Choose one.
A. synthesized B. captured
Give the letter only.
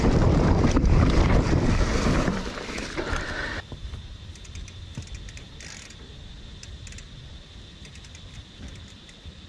A